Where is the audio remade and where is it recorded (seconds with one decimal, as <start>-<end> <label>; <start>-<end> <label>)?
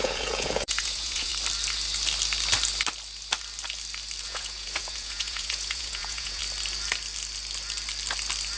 0.0-1.3 remade; 1.3-4.2 recorded; 4.2-6.4 remade; 6.4-8.6 recorded